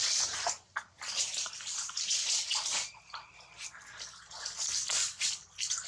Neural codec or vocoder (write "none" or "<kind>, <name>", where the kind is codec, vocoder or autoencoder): none